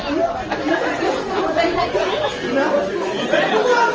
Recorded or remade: recorded